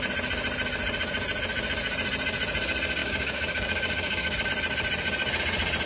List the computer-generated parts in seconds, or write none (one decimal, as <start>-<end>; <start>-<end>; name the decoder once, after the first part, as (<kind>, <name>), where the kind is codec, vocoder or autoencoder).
3.0-4.5 (codec, DAC)